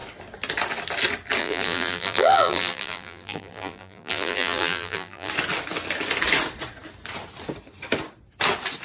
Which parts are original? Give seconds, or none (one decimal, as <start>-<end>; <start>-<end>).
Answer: 0.0-1.4; 5.3-8.8